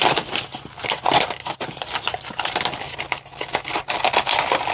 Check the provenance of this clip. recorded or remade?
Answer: recorded